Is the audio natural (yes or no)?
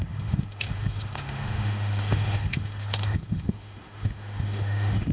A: no